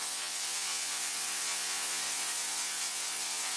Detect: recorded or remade remade